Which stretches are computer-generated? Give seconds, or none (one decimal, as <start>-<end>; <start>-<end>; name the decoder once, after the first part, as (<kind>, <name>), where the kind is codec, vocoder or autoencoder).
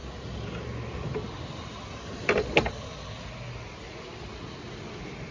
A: none